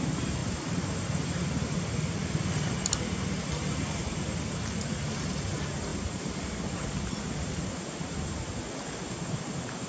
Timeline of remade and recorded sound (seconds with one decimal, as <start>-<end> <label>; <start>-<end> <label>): 0.0-0.4 recorded; 0.4-2.9 remade; 2.9-9.9 recorded